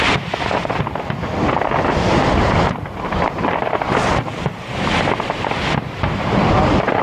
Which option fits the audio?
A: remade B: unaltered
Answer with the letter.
A